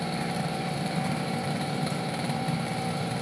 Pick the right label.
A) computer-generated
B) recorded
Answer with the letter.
A